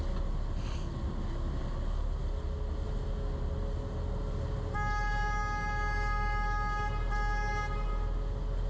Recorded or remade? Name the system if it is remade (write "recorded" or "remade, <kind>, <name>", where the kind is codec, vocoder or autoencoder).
recorded